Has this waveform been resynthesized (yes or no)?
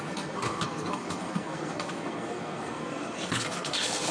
yes